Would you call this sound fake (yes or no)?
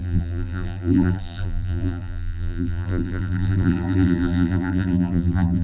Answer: yes